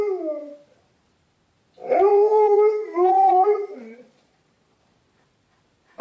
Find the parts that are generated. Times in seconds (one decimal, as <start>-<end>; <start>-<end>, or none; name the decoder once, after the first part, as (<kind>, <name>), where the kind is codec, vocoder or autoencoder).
2.1-4.8 (vocoder, Vocos)